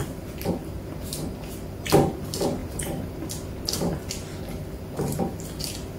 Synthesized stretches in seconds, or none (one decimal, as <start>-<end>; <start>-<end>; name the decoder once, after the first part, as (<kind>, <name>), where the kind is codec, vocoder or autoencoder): 1.4-2.6 (vocoder, BigVGAN v2); 5.2-6.0